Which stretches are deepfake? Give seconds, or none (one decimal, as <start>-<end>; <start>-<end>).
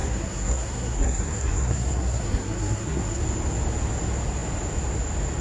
0.0-3.2